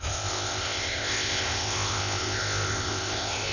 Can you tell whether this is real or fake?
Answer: fake